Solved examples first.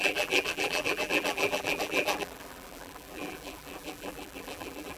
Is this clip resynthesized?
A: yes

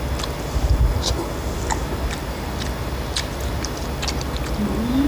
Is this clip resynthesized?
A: no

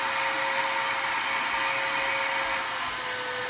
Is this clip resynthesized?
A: no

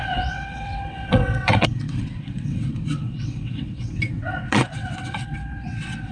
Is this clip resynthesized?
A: yes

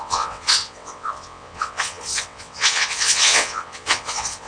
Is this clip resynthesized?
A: yes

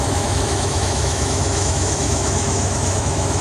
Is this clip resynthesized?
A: yes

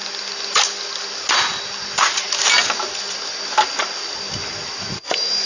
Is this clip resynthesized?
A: no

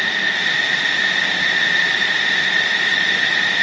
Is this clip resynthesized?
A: yes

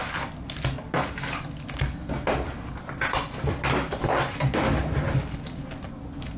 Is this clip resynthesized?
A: no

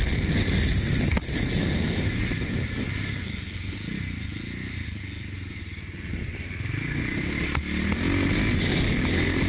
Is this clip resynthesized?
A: no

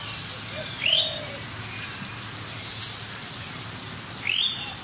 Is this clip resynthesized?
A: no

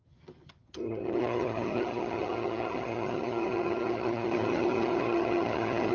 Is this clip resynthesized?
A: yes